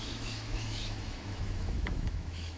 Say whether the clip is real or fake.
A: fake